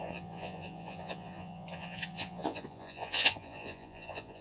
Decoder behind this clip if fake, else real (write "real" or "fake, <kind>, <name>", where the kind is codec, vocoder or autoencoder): fake, vocoder, Vocos